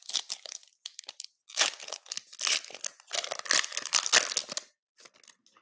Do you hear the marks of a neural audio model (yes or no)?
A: no